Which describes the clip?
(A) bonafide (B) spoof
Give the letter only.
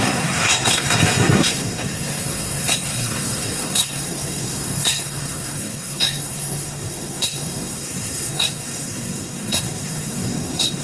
B